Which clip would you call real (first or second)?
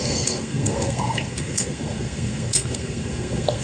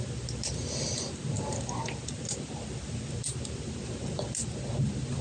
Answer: second